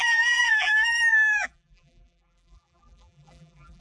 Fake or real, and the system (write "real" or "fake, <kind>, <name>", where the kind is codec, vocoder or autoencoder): fake, vocoder, BigVGAN v2